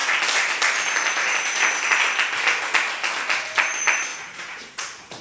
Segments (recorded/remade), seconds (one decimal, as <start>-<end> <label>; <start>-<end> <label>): 0.0-4.1 recorded; 4.1-5.2 remade